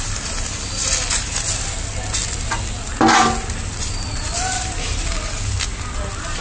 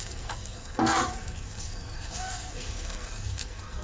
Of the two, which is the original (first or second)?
first